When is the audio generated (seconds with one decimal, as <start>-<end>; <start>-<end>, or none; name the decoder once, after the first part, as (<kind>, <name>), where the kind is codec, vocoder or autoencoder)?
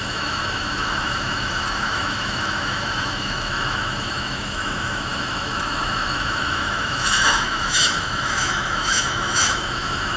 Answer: 0.0-10.2 (autoencoder, DAC-VAE)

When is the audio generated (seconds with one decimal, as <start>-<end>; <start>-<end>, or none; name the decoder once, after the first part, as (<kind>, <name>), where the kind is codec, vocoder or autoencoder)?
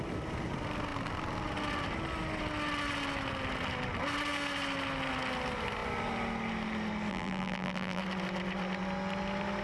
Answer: 7.1-8.0 (vocoder, BigVGAN v2)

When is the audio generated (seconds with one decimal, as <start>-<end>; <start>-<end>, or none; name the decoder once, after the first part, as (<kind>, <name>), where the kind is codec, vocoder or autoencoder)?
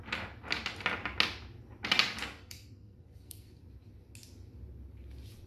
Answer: 2.4-3.6 (codec, SNAC)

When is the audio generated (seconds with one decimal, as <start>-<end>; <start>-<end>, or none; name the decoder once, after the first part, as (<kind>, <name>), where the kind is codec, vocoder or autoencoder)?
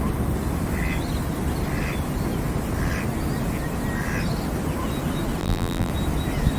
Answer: 5.4-5.9 (vocoder, BigVGAN v2)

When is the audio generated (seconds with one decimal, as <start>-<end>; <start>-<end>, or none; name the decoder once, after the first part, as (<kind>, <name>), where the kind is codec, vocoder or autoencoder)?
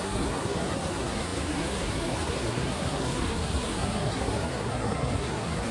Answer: 0.0-5.7 (codec, SNAC)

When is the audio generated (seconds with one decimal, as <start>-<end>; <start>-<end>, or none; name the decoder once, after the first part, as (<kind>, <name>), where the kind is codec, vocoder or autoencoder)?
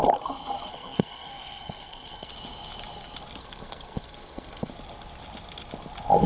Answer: 0.7-2.3 (codec, SNAC); 3.4-4.7